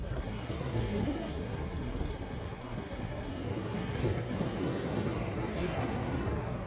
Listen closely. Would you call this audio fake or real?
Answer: fake